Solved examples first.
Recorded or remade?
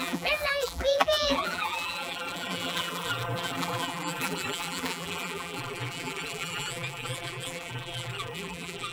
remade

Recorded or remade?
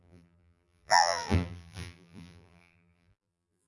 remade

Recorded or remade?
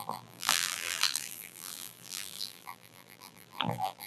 remade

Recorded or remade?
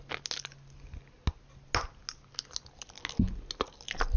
recorded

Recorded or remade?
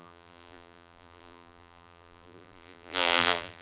remade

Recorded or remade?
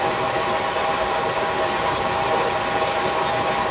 remade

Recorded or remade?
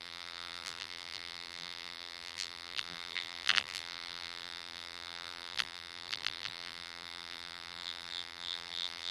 remade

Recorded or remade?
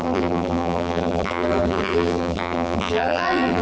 remade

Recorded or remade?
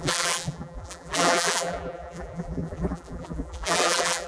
remade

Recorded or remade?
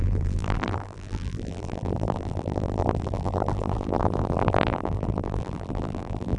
remade